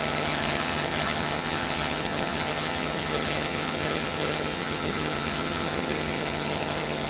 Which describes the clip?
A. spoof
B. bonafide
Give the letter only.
A